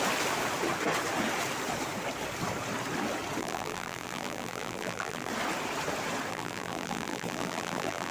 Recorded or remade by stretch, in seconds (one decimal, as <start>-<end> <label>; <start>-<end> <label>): 0.0-3.4 recorded; 3.4-5.3 remade; 5.3-6.3 recorded; 6.3-8.1 remade